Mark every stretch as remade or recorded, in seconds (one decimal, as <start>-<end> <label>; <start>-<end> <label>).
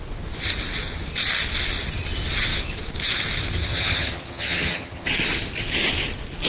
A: 0.0-3.6 recorded; 3.6-5.1 remade; 5.1-6.5 recorded